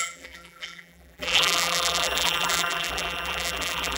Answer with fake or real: fake